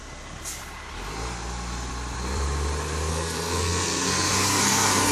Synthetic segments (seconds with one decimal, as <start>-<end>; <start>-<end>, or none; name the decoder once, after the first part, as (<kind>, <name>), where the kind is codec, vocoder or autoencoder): 3.1-5.1 (codec, SNAC)